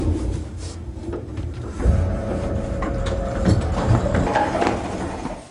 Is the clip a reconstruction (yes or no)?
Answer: yes